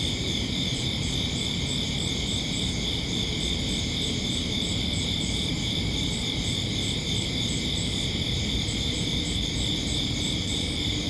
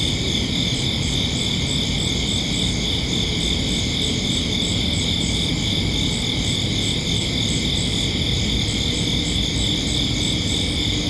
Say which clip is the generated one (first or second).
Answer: first